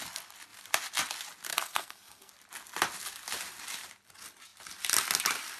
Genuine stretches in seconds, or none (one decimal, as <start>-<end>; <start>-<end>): 0.0-1.5; 2.3-5.6